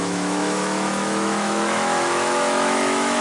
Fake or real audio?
fake